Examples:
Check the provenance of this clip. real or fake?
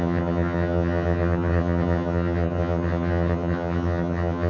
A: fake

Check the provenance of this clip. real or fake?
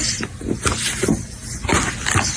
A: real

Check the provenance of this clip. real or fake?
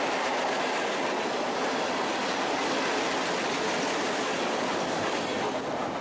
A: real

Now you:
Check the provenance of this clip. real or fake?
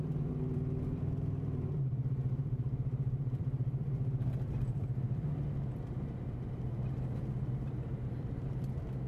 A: fake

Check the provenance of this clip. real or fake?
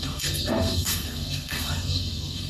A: fake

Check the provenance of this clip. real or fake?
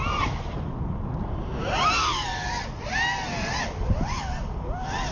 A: real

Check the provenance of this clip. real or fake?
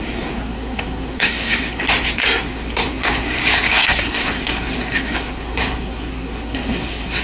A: fake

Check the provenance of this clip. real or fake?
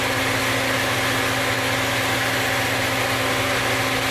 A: real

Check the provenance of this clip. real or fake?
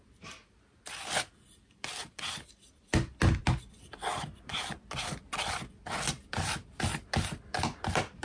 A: real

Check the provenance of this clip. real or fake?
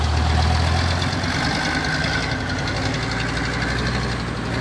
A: real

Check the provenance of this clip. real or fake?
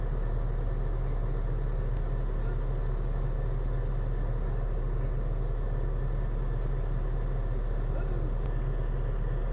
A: real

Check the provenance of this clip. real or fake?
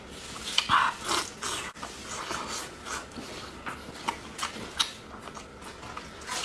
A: real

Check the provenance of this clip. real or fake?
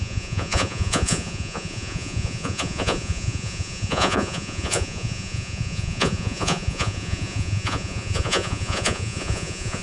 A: fake